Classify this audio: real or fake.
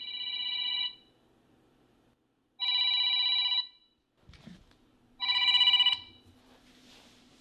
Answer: real